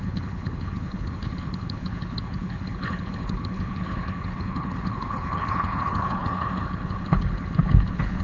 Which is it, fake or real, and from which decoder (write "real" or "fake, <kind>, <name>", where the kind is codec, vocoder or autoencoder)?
fake, codec, HILCodec